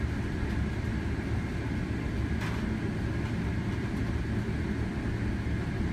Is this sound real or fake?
real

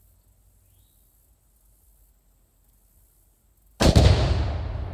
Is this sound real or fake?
real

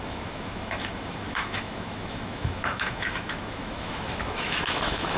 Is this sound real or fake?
fake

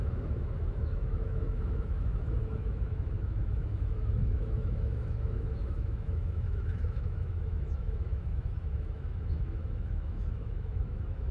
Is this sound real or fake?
fake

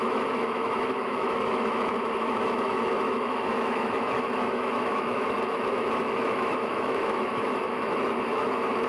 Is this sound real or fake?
fake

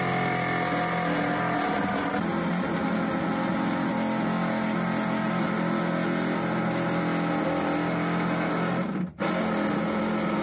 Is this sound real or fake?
real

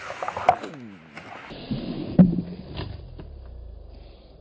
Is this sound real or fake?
real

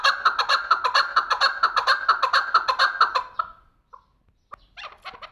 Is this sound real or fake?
real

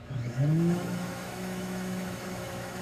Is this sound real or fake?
fake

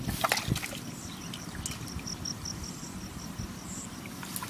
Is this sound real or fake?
real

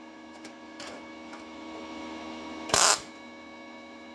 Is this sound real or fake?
fake